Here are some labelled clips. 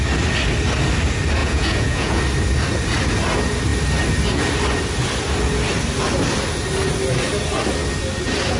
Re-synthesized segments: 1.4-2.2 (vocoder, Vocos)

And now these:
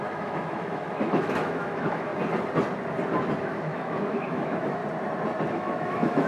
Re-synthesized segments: 0.0-2.1 (autoencoder, DAC-VAE); 3.4-4.8; 5.5-6.3

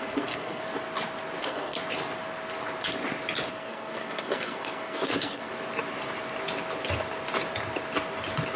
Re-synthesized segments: 0.0-0.7 (codec, SNAC); 1.4-1.8; 3.5-5.5

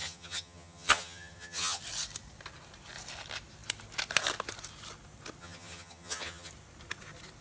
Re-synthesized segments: 0.0-1.8 (vocoder, HiFi-GAN); 5.4-6.5

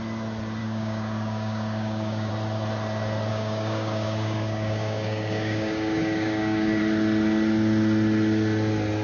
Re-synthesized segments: 0.6-2.3 (codec, DAC); 3.3-6.8

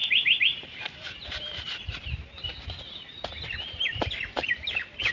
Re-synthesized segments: 0.0-1.6 (vocoder, BigVGAN v2)

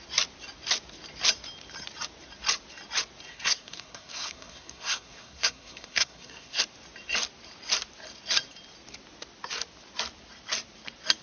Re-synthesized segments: 3.3-6.6 (codec, SNAC)